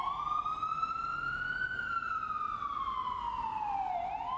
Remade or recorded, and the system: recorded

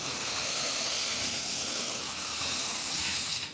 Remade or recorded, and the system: remade, codec, SNAC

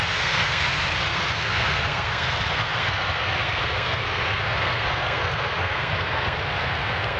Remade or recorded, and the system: remade, codec, SNAC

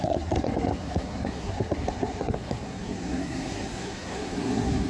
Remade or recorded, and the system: remade, codec, SNAC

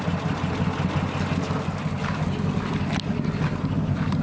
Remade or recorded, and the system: recorded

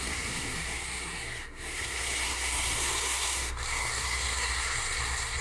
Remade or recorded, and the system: remade, codec, SNAC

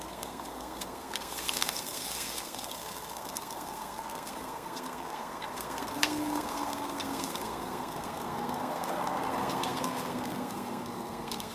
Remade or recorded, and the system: remade, codec, SNAC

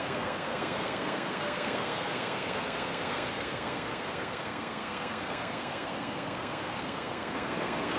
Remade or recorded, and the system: remade, codec, SNAC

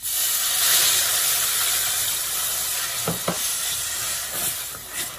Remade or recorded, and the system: recorded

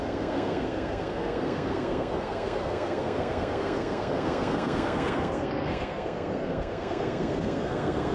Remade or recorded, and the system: remade, codec, SNAC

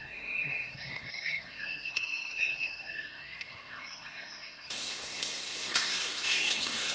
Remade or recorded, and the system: remade, codec, SNAC